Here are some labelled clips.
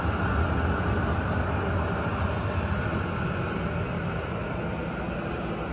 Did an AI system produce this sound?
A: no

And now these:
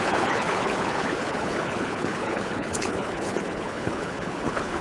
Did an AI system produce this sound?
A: yes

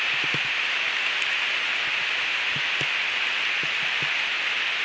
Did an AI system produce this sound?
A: no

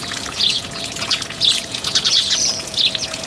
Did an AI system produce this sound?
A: yes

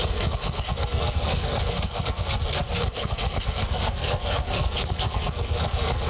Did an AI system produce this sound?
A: yes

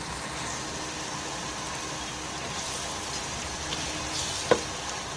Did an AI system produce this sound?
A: no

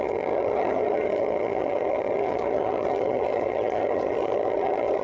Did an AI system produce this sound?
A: yes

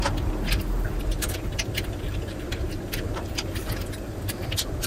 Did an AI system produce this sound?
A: no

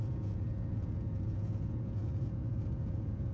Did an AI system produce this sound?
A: yes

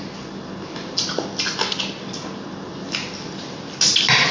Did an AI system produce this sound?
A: no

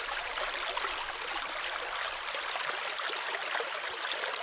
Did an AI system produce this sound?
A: no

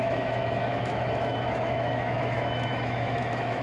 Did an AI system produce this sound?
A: yes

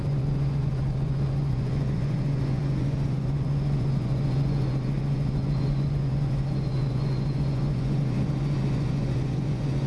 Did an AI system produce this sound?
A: yes